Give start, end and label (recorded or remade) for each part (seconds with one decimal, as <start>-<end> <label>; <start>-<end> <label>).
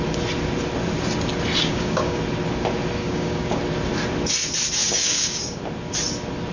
0.0-1.6 recorded; 1.6-2.2 remade; 2.2-3.0 recorded; 3.0-3.6 remade; 3.6-4.8 recorded; 4.8-5.6 remade; 5.6-6.5 recorded